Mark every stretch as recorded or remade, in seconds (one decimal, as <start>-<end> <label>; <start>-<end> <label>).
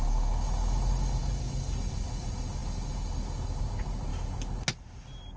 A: 0.0-5.4 recorded